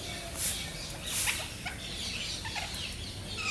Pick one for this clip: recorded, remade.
recorded